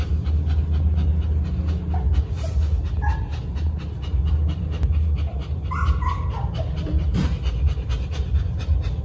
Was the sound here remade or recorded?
recorded